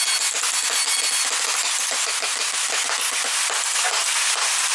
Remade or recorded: recorded